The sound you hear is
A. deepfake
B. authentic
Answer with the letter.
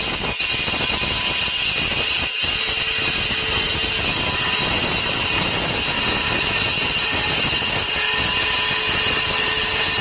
B